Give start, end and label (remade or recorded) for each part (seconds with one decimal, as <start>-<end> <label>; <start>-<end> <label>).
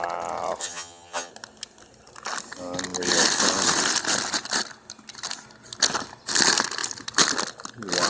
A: 0.0-0.6 recorded; 0.6-1.3 remade; 1.3-8.1 recorded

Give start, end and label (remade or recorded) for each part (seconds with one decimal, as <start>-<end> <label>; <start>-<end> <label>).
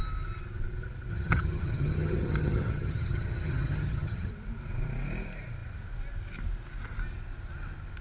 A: 0.0-1.1 recorded; 1.1-4.3 remade; 4.3-8.0 recorded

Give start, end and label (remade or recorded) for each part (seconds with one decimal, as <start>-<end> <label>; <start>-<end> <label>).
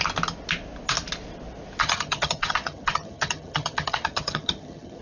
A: 0.0-1.8 recorded; 1.8-5.0 remade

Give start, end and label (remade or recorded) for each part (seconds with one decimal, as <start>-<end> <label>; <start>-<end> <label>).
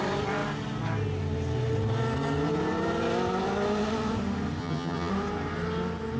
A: 0.0-4.6 recorded; 4.6-5.1 remade; 5.1-6.2 recorded